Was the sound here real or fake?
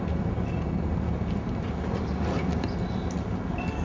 real